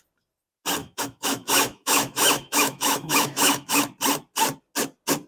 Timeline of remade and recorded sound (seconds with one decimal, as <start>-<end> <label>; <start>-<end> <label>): 0.0-0.8 recorded; 0.8-3.8 remade; 3.8-5.3 recorded